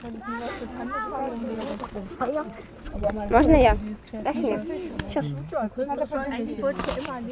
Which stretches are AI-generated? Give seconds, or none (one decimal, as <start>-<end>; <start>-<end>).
1.4-3.1

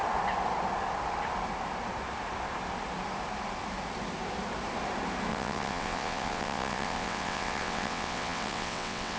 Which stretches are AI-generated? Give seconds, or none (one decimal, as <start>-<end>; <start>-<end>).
5.3-9.2

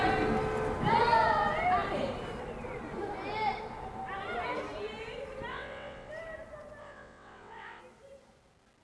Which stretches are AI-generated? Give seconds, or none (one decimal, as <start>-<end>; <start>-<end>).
5.5-6.1; 6.8-7.8

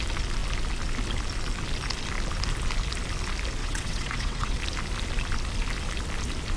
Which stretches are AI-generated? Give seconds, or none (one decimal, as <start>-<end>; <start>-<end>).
3.6-4.6

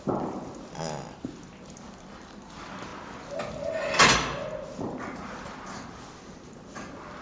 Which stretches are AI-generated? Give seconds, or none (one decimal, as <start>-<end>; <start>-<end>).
none

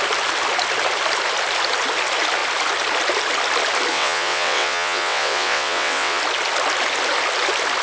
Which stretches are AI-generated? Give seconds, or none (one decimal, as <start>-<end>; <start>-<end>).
3.9-6.2

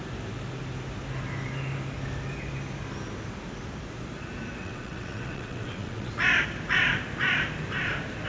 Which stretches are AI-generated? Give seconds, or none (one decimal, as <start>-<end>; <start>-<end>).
4.6-6.1